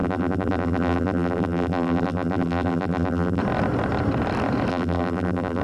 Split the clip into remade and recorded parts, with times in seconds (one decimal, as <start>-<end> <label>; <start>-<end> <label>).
0.0-3.4 remade; 3.4-4.7 recorded; 4.7-5.6 remade